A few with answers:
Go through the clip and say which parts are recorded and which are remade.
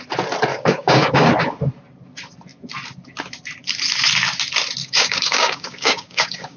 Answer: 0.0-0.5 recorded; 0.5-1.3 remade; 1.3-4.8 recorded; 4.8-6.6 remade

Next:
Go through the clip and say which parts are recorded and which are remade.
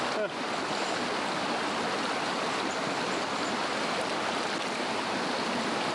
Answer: 0.0-5.9 recorded